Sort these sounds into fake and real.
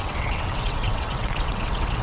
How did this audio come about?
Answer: fake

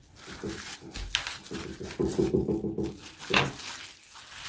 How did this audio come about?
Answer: real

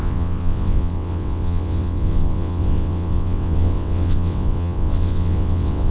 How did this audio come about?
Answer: fake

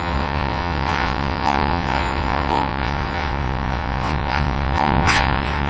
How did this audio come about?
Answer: fake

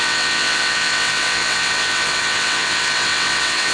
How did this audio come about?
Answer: fake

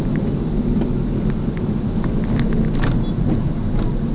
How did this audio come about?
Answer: real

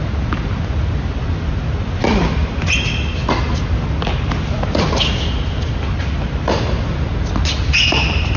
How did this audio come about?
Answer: real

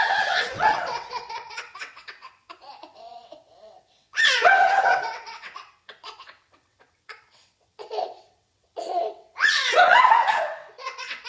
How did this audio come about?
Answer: fake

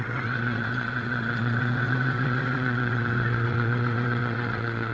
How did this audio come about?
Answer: fake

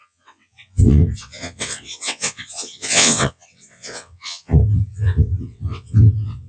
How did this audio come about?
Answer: fake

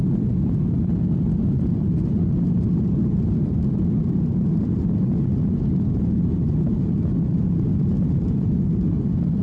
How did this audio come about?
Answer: real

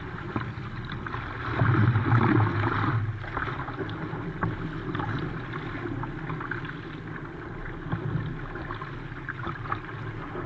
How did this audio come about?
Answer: real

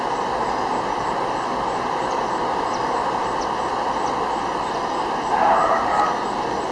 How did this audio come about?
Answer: real